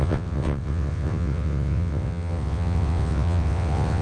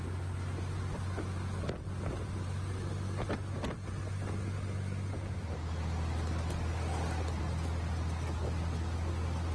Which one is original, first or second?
second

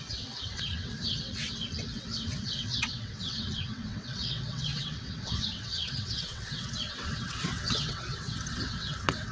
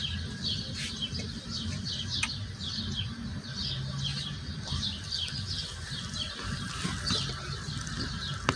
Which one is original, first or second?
second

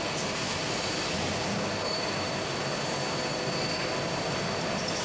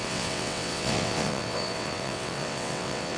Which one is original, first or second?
first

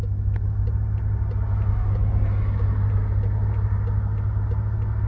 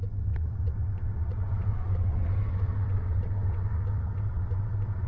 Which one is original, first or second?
first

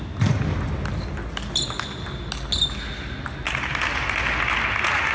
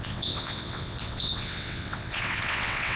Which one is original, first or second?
first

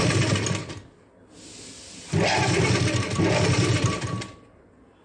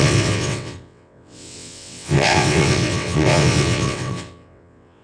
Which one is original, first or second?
first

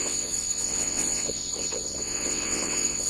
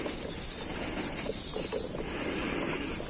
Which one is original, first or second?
second